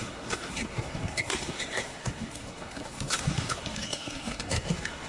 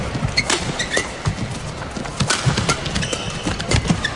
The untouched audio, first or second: second